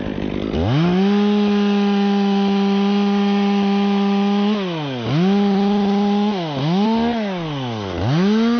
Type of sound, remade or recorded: recorded